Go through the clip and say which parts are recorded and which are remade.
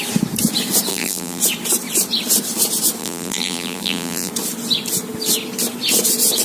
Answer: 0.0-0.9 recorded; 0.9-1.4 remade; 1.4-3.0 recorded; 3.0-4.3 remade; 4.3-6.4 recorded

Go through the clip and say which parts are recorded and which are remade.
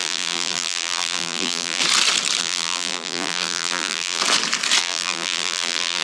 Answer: 0.0-1.8 remade; 1.8-2.4 recorded; 2.4-4.2 remade; 4.2-4.8 recorded; 4.8-6.0 remade